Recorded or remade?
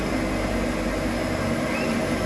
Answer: recorded